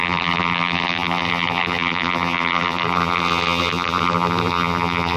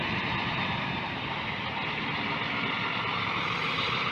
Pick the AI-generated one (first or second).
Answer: first